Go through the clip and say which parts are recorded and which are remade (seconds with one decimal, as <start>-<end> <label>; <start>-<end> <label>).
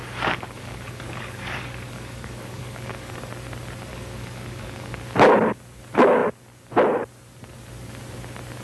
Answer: 0.0-3.3 remade; 3.3-3.9 recorded; 3.9-5.0 remade; 5.0-8.6 recorded